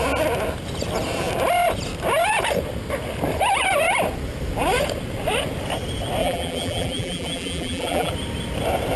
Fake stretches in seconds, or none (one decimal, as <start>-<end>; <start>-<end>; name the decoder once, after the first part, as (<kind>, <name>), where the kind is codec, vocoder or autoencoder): 6.2-8.1 (vocoder, BigVGAN v2)